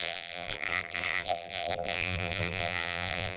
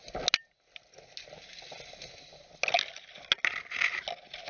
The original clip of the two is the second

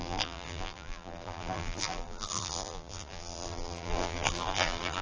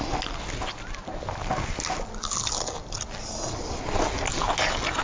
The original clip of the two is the second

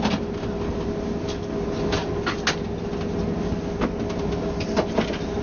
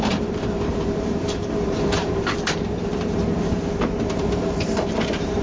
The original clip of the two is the first